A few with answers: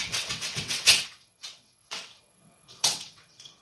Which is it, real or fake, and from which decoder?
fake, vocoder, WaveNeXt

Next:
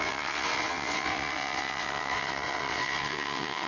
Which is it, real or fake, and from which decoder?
fake, vocoder, WaveNeXt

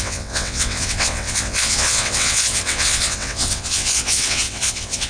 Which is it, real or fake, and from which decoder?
fake, vocoder, WaveNeXt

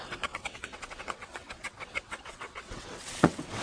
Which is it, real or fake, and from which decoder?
fake, vocoder, WaveNeXt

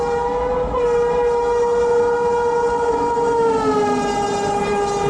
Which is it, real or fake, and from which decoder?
real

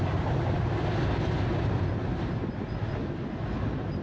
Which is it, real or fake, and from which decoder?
real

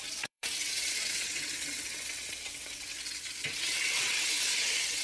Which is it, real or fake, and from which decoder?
fake, vocoder, WaveNeXt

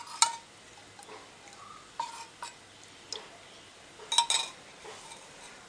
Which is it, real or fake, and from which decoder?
real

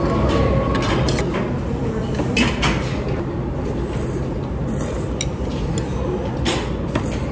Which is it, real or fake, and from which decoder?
real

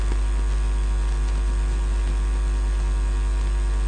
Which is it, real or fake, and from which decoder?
real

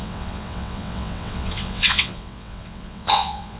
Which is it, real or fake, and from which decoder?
fake, vocoder, WaveNeXt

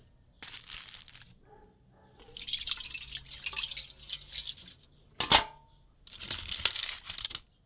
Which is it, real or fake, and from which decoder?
real